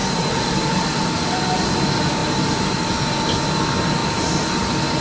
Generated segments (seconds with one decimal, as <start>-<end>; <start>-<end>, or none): none